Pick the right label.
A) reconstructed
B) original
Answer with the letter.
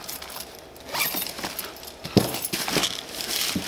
B